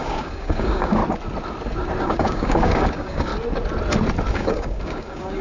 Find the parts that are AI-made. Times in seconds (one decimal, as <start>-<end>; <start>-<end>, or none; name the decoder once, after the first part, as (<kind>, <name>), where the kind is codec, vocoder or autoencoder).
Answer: 0.0-1.0 (codec, DAC); 2.0-3.3; 4.3-5.4